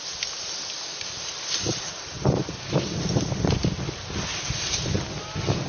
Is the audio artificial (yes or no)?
no